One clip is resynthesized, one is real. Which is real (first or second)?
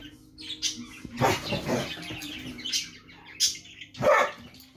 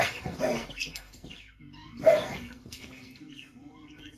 first